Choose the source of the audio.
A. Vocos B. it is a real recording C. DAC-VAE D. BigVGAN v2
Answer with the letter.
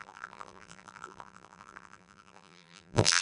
D